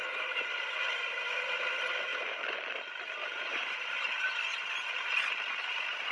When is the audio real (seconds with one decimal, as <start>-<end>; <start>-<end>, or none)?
1.0-2.1; 5.1-6.1